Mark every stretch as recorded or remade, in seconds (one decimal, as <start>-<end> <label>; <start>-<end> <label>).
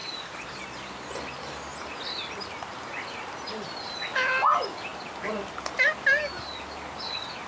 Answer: 0.0-0.6 remade; 0.6-4.9 recorded; 4.9-6.1 remade; 6.1-7.5 recorded